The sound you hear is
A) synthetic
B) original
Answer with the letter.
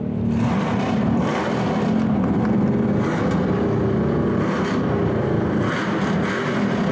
B